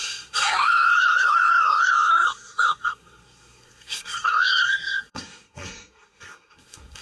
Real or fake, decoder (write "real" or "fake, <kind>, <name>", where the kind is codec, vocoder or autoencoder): fake, codec, SNAC